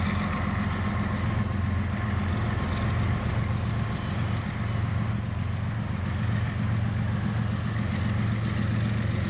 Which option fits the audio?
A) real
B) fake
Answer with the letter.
A